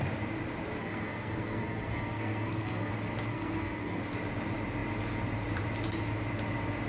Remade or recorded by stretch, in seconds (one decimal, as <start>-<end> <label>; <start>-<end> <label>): 0.0-0.8 recorded; 0.8-2.9 remade; 2.9-3.3 recorded; 3.3-4.0 remade; 4.0-6.9 recorded